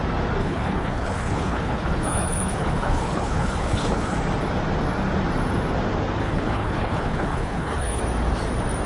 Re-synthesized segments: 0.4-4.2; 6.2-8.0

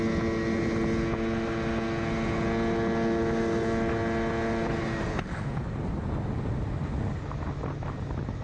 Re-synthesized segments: 5.1-5.6

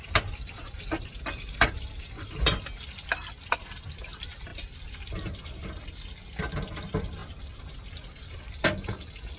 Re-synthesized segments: none

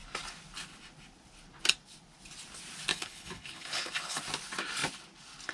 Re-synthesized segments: 2.9-4.2

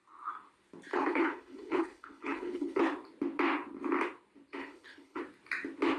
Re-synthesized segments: 0.9-2.8; 4.6-5.2